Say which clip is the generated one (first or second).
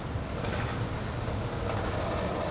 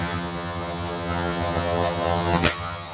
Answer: second